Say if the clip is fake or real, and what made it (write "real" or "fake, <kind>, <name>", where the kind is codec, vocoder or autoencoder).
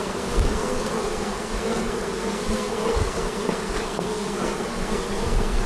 fake, codec, SNAC